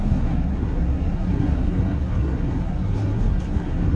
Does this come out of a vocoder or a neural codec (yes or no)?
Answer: yes